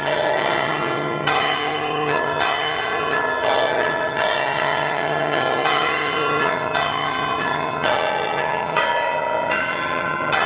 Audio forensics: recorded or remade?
remade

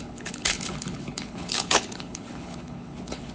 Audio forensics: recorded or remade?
remade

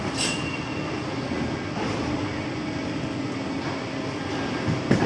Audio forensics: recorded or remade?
recorded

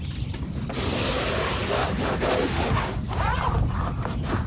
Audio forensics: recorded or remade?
recorded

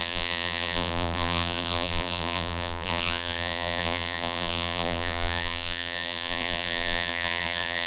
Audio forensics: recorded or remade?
remade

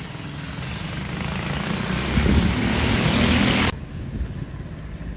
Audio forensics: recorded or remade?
recorded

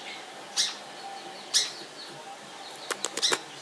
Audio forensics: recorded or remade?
recorded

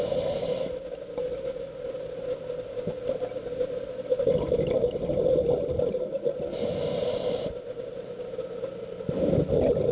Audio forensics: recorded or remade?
recorded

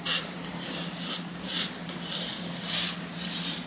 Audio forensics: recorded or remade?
remade